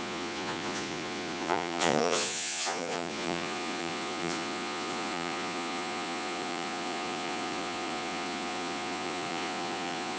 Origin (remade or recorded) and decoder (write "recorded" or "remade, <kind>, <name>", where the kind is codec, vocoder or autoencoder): remade, vocoder, Vocos